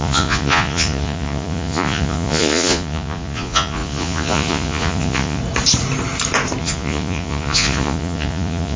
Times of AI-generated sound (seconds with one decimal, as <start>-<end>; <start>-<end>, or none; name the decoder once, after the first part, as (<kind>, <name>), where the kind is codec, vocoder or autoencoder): 0.0-5.4 (vocoder, Vocos); 6.6-8.8